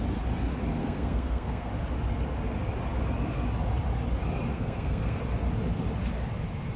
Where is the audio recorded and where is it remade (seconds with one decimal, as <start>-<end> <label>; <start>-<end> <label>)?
0.0-0.8 recorded; 0.8-1.7 remade; 1.7-4.5 recorded; 4.5-5.2 remade; 5.2-6.8 recorded

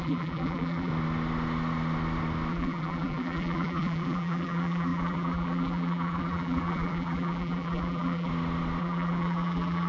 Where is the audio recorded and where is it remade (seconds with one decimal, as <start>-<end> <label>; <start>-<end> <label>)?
0.0-0.9 remade; 0.9-2.5 recorded; 2.5-8.3 remade; 8.3-8.8 recorded; 8.8-9.9 remade